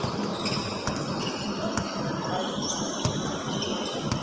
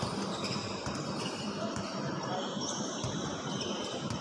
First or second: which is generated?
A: second